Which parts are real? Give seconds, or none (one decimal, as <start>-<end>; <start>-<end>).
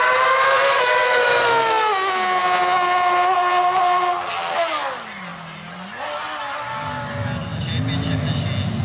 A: 0.0-8.8